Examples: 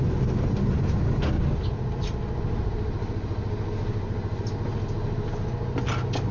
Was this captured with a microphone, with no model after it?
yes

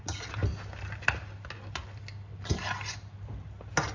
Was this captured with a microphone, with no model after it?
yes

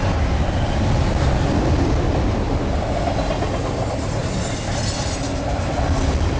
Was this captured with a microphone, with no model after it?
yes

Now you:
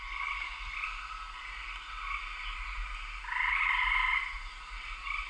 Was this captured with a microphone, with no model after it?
yes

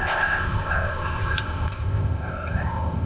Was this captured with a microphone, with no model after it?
no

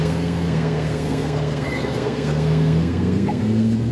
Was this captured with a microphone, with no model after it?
no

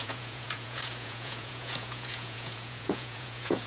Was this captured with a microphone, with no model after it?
no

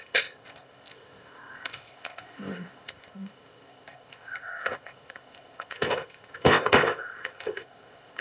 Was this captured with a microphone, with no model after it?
no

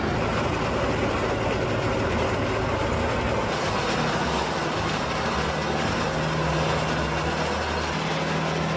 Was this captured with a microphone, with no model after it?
yes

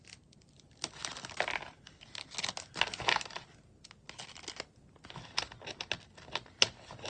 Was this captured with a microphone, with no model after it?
yes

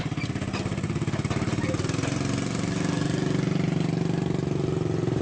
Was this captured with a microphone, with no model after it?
yes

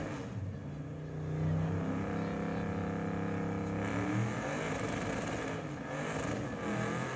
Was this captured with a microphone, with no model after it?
yes